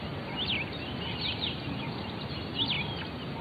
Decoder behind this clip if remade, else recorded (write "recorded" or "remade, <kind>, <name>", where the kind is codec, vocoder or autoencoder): recorded